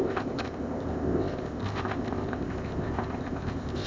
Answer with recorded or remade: remade